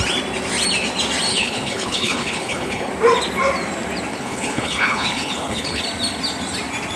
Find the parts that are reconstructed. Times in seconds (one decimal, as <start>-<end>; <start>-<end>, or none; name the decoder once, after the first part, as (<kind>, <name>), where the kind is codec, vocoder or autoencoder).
1.3-2.9 (codec, HILCodec); 4.1-5.8